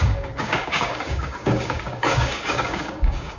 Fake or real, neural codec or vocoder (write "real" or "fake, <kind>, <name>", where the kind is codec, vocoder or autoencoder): fake, codec, DAC